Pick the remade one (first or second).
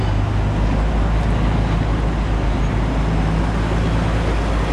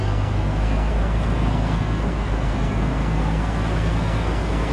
second